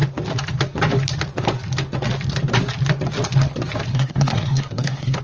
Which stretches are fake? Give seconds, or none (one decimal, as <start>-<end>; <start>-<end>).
3.9-5.2

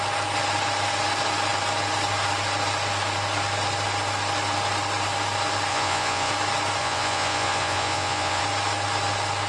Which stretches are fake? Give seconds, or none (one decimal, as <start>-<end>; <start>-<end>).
5.7-6.3; 6.8-8.4

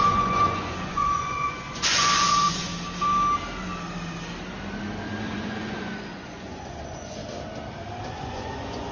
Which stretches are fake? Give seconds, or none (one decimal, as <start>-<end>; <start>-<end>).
0.0-2.7; 5.2-7.2; 8.1-8.9

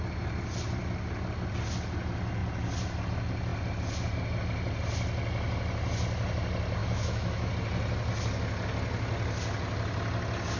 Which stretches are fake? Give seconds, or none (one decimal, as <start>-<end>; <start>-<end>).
6.8-7.5

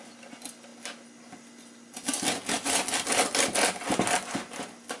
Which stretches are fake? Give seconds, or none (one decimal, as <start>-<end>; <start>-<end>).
none